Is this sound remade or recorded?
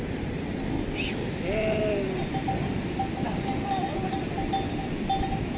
recorded